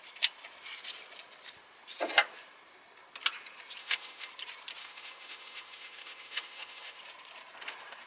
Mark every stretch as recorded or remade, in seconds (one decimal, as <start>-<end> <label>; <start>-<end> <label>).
0.0-3.8 recorded; 3.8-4.3 remade; 4.3-4.8 recorded; 4.8-7.0 remade; 7.0-8.1 recorded